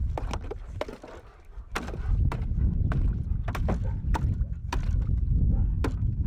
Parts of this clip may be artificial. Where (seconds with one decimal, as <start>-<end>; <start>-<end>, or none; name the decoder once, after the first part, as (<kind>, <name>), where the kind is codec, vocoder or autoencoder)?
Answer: none